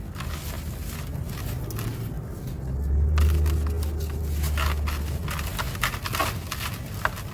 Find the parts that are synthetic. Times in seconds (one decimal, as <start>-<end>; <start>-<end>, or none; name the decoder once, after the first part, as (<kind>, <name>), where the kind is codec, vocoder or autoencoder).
none